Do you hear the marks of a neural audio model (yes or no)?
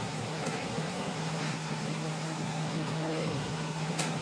yes